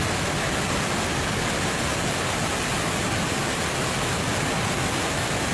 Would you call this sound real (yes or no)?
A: yes